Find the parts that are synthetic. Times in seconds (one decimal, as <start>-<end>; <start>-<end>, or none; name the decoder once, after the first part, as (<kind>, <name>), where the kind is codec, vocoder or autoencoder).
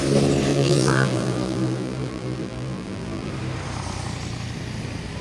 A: 0.5-3.3 (vocoder, BigVGAN v2)